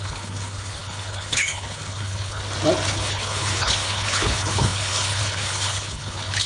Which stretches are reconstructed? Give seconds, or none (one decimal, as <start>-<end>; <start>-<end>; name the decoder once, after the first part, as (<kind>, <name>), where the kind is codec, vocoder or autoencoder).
0.0-2.4 (codec, HILCodec); 2.9-6.5